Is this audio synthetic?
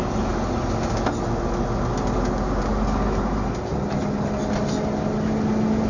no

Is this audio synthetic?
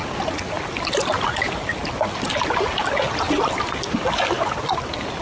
no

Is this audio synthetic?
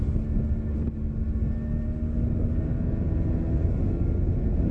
no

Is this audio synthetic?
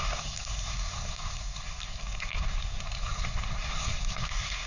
yes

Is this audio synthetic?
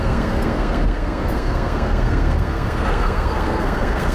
yes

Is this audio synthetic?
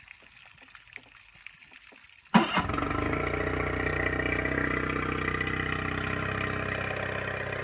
no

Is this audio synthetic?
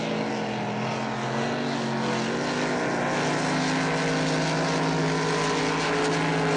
no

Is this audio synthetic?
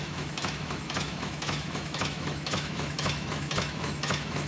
yes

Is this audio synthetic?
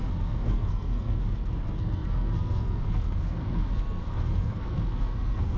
yes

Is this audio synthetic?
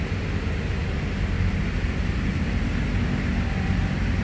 no